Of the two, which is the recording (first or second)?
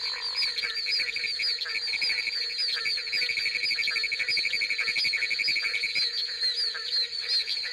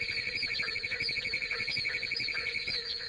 first